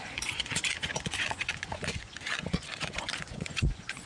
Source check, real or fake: fake